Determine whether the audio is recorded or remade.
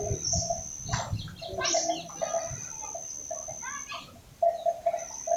recorded